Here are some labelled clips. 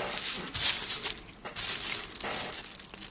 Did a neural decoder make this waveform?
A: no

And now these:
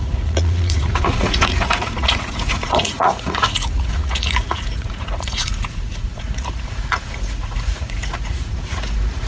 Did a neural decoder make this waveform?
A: yes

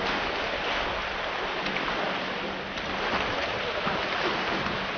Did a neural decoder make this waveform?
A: no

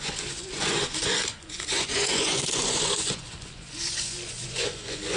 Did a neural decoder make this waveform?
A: yes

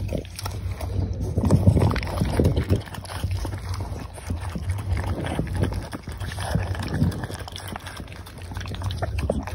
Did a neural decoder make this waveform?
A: no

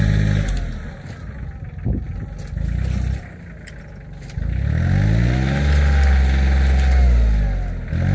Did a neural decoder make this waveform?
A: no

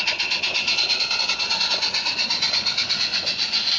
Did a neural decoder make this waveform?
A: yes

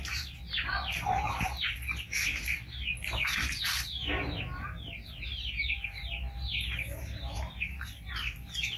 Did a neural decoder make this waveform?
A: no